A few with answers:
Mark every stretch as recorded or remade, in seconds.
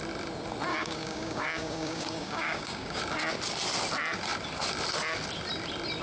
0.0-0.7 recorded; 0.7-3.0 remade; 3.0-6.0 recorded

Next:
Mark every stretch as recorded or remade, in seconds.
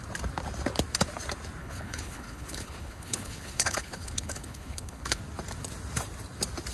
0.0-1.6 recorded; 1.6-5.2 remade; 5.2-6.7 recorded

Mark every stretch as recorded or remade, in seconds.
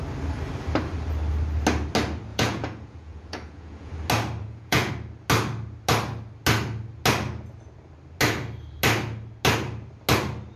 0.0-2.3 recorded; 2.3-3.9 remade; 3.9-4.4 recorded; 4.4-4.9 remade; 4.9-10.6 recorded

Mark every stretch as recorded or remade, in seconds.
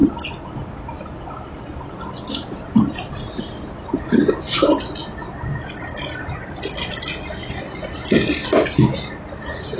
0.0-4.0 remade; 4.0-5.0 recorded; 5.0-5.5 remade; 5.5-9.8 recorded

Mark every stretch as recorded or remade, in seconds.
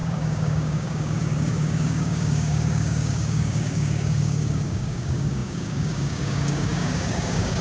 0.0-7.6 remade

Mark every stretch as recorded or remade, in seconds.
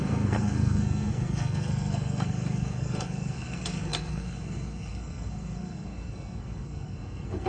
0.0-7.5 remade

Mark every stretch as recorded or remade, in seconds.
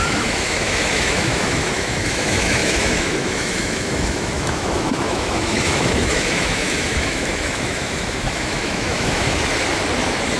0.0-9.5 remade; 9.5-10.4 recorded